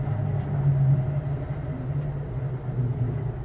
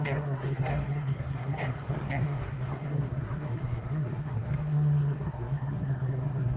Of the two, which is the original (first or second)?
first